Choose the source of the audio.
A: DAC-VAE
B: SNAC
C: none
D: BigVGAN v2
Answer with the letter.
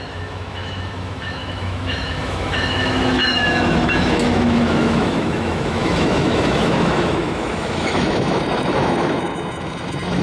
A